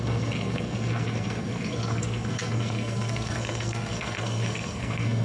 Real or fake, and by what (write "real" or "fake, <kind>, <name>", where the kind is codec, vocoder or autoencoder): fake, codec, SNAC